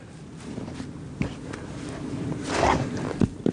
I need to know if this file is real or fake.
real